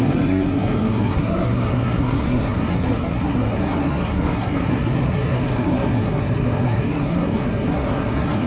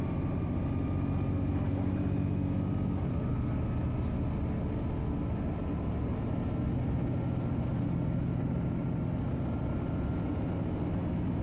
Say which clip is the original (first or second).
second